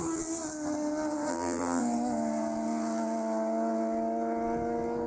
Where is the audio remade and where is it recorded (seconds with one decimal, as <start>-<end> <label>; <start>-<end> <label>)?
0.0-1.3 recorded; 1.3-1.8 remade; 1.8-5.1 recorded